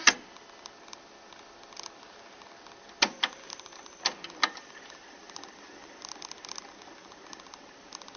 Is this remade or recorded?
recorded